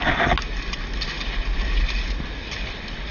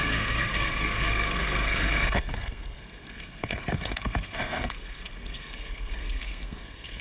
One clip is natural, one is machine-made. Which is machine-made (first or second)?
second